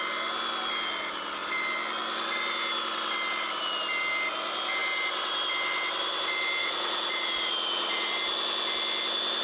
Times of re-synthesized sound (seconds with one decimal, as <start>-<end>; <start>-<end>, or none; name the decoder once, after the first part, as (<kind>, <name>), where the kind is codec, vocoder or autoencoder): 6.6-8.1 (vocoder, Vocos)